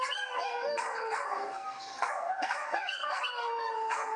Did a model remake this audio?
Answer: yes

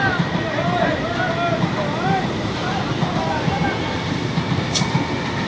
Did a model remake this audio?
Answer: no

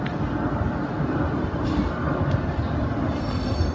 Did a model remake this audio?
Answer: no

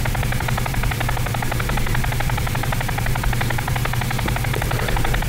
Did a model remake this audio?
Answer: yes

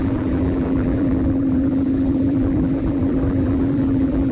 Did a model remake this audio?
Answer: yes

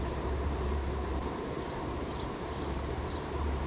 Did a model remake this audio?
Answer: yes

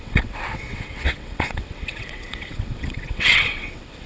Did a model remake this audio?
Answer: yes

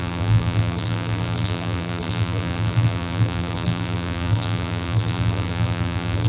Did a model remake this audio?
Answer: yes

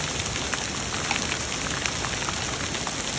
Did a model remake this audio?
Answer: no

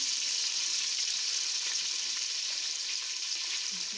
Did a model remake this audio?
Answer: yes